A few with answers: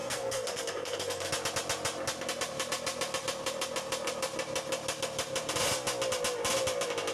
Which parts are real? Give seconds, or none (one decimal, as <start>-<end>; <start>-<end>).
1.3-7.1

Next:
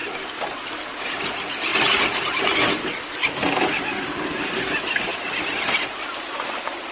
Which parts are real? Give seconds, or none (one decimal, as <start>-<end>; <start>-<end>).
0.7-6.9

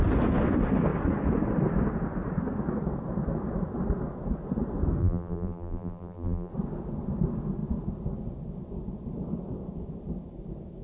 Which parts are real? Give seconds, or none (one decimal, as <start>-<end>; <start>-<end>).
0.0-5.0; 6.5-10.8